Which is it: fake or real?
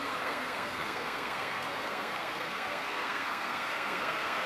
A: fake